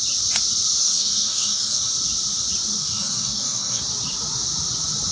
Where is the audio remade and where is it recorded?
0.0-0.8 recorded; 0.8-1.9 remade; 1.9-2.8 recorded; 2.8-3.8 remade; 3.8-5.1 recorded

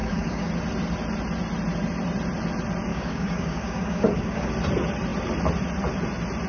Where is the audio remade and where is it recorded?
0.0-0.5 remade; 0.5-2.9 recorded; 2.9-4.5 remade; 4.5-6.5 recorded

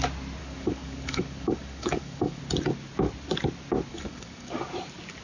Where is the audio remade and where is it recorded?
0.0-0.4 recorded; 0.4-2.4 remade; 2.4-3.9 recorded; 3.9-4.5 remade; 4.5-5.2 recorded

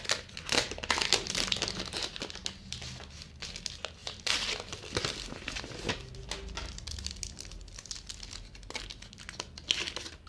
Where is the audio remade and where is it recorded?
0.0-10.3 recorded

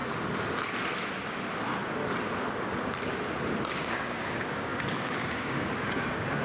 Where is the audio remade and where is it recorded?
0.0-3.7 recorded; 3.7-6.4 remade

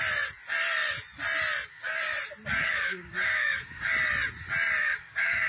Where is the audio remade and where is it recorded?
0.0-2.6 recorded; 2.6-3.9 remade; 3.9-4.8 recorded; 4.8-5.5 remade